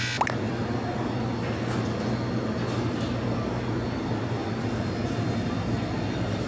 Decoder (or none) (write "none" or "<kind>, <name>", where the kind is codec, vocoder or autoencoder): none